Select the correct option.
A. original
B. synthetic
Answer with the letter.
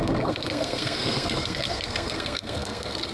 B